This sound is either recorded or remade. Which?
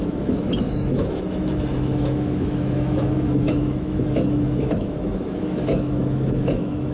remade